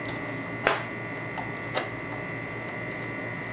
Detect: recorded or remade recorded